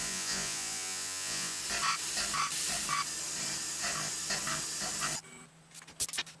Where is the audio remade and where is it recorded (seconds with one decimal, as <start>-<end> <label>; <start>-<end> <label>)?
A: 0.0-1.6 remade; 1.6-6.4 recorded